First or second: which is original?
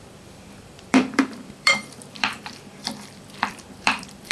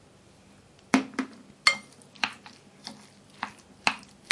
second